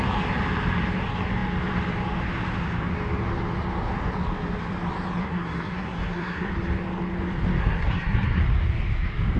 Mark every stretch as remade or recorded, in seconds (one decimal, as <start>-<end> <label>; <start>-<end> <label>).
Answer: 0.0-5.2 recorded; 5.2-6.5 remade; 6.5-7.6 recorded; 7.6-8.4 remade; 8.4-9.4 recorded